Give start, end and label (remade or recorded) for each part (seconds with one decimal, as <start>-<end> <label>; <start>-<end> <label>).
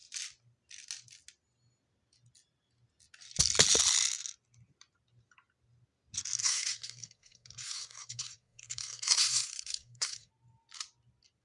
0.0-6.4 recorded; 6.4-10.3 remade; 10.3-11.4 recorded